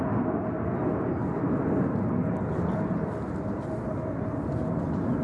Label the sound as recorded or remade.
recorded